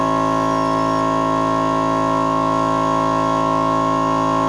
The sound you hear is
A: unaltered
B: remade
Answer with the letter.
A